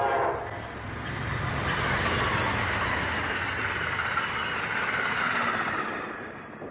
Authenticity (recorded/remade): recorded